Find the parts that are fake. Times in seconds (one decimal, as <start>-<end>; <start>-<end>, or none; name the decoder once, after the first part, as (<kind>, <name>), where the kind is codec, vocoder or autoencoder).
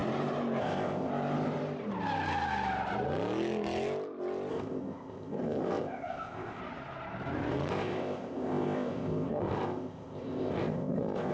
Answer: 0.6-1.1 (codec, ZipCodec); 4.5-6.6; 7.7-11.3